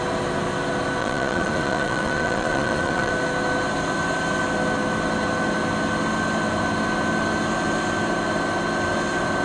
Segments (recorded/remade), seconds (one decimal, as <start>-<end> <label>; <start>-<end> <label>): 0.0-1.0 recorded; 1.0-3.1 remade; 3.1-9.4 recorded